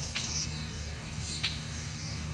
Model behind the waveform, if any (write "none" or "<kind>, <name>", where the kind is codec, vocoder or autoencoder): codec, DAC